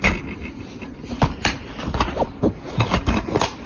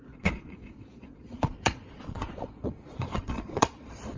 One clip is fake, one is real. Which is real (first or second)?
first